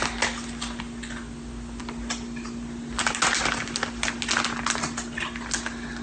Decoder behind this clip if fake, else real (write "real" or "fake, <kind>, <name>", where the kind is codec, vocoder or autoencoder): real